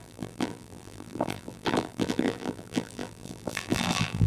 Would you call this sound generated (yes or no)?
yes